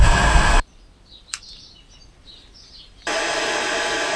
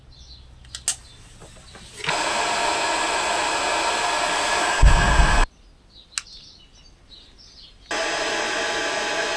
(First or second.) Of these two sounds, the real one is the second